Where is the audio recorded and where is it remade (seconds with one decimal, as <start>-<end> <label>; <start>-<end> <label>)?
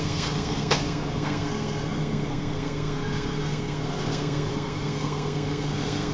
0.0-6.1 remade